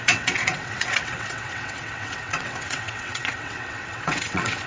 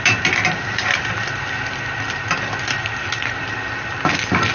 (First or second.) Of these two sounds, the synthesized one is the first